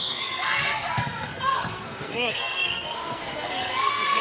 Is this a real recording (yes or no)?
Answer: no